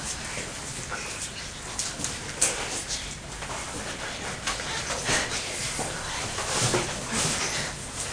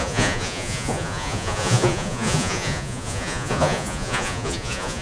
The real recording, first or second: first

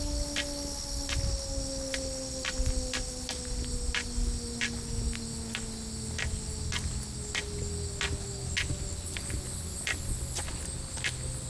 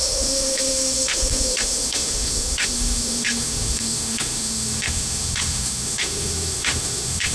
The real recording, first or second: first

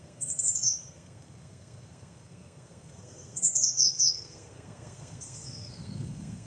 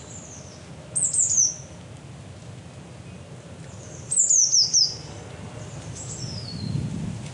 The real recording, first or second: second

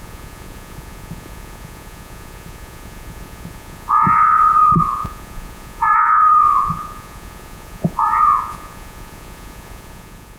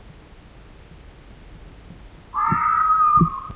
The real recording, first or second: second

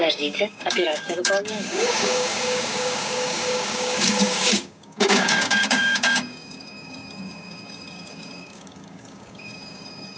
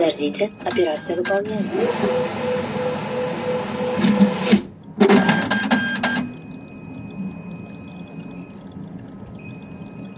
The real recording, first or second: second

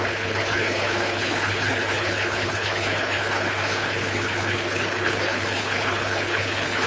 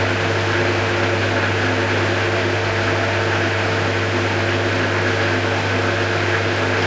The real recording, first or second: second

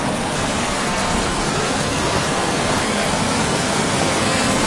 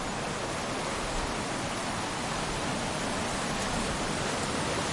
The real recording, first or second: second